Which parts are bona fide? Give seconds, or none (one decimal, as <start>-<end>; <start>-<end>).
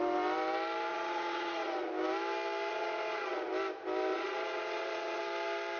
0.0-0.9; 1.9-2.7; 3.5-4.1; 5.2-5.8